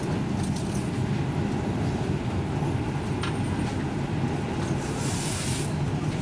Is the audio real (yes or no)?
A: yes